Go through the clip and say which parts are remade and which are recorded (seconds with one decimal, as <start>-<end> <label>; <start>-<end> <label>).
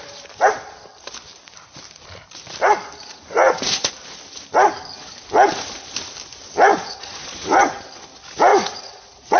0.0-3.1 recorded; 3.1-3.9 remade; 3.9-6.7 recorded; 6.7-7.8 remade; 7.8-8.5 recorded; 8.5-9.4 remade